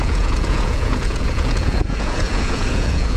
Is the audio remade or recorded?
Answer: remade